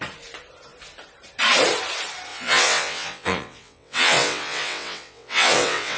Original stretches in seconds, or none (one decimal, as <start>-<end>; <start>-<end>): 0.0-2.3